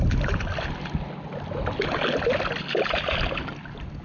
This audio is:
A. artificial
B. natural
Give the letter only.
B